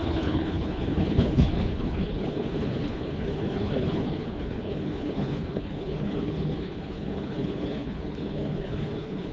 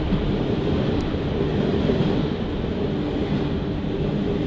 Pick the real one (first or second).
second